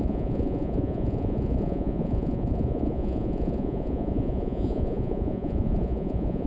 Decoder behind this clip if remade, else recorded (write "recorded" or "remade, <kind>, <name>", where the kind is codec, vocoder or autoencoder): remade, vocoder, Vocos